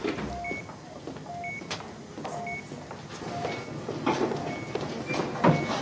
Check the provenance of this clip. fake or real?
real